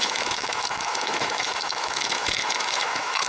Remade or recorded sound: remade